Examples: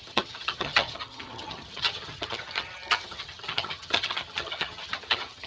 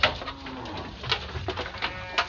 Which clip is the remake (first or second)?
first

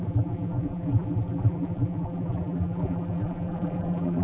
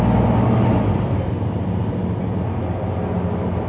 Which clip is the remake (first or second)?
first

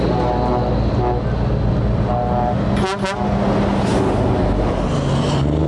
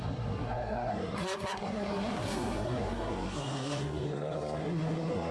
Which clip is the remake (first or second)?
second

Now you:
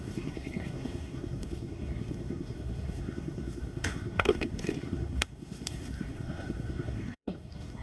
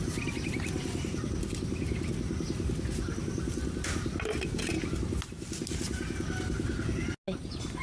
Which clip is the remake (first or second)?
first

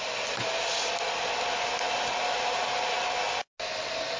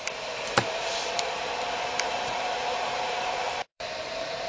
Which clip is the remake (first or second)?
second